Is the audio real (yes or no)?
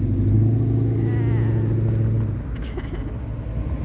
yes